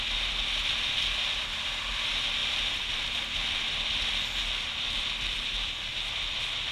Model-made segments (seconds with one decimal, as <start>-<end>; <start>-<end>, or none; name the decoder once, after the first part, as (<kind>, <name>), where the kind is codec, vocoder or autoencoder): none